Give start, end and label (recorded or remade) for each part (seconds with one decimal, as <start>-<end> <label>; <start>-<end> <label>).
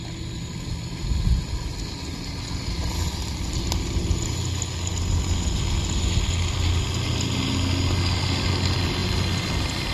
0.0-9.9 recorded